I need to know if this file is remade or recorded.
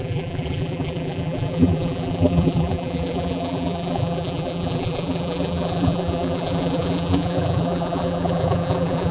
remade